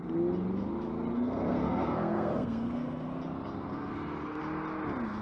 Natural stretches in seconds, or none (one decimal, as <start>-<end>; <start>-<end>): 0.0-1.1; 3.1-3.7; 4.4-5.2